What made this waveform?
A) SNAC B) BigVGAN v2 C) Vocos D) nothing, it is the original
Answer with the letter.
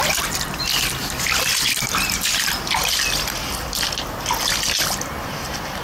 D